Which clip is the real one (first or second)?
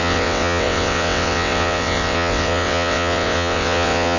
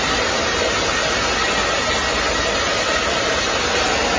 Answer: second